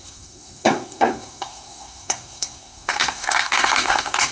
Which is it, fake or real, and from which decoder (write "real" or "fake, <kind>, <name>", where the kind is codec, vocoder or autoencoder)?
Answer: fake, codec, SNAC